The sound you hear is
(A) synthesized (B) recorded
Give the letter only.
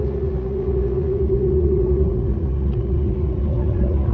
A